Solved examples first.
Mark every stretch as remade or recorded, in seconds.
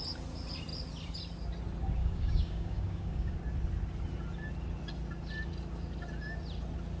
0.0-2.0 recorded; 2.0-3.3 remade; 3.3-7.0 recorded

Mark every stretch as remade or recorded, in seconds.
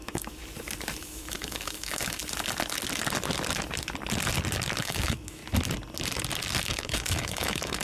0.0-0.4 remade; 0.4-1.0 recorded; 1.0-2.2 remade; 2.2-4.8 recorded; 4.8-5.4 remade; 5.4-6.6 recorded; 6.6-7.8 remade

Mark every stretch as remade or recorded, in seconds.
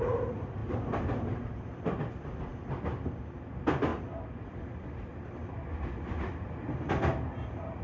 0.0-0.6 recorded; 0.6-2.0 remade; 2.0-7.8 recorded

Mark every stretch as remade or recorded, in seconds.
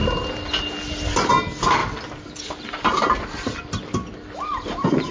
0.0-5.1 recorded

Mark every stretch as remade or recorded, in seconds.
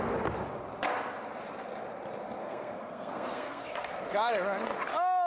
0.0-2.4 recorded; 2.4-3.6 remade; 3.6-5.3 recorded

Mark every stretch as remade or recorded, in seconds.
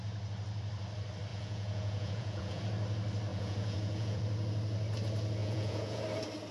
0.0-1.3 recorded; 1.3-2.6 remade; 2.6-3.3 recorded; 3.3-4.2 remade; 4.2-5.4 recorded; 5.4-6.0 remade; 6.0-6.5 recorded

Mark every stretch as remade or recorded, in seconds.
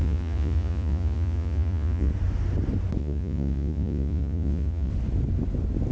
0.0-2.1 remade; 2.1-3.0 recorded; 3.0-4.9 remade; 4.9-5.9 recorded